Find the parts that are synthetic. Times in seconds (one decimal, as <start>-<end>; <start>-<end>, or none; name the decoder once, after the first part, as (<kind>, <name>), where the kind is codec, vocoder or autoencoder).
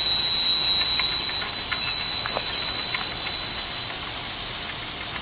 none